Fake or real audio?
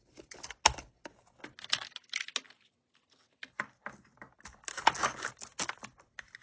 real